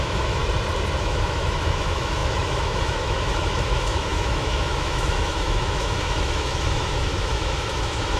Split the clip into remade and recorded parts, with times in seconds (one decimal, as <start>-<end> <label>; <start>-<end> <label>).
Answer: 0.0-0.4 remade; 0.4-1.0 recorded; 1.0-8.2 remade